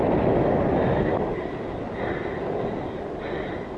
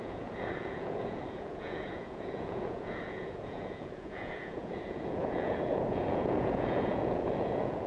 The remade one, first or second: second